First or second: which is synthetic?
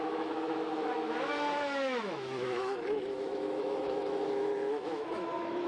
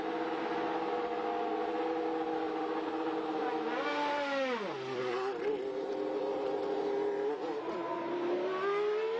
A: first